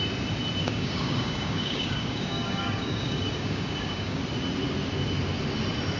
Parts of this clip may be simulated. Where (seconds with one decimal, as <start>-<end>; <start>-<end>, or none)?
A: 0.6-4.2